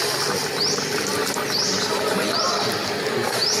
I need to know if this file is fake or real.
real